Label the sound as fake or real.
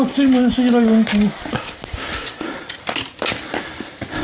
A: real